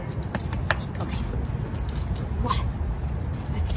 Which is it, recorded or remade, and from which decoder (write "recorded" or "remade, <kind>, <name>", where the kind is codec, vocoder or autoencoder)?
recorded